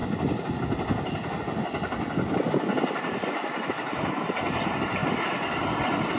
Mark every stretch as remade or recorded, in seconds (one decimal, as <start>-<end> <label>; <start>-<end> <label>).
0.0-3.7 recorded; 3.7-5.0 remade; 5.0-6.2 recorded